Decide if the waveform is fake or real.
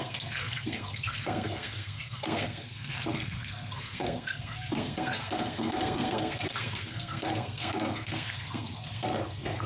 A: fake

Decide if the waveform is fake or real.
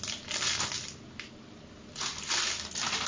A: real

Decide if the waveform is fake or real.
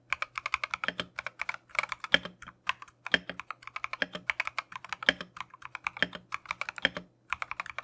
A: real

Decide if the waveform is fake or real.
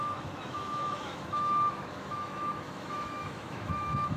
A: fake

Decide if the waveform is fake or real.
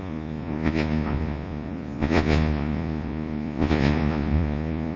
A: fake